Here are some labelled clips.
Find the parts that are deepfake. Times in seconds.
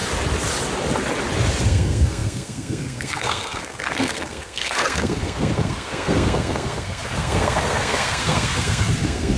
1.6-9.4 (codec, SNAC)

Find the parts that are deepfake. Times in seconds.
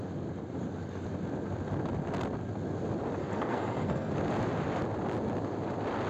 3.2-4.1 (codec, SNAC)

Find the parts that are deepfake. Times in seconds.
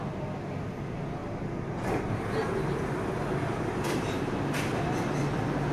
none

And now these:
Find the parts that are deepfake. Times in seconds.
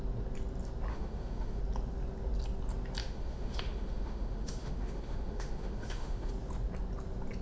0.9-1.6 (autoencoder, DAC-VAE); 3.0-6.3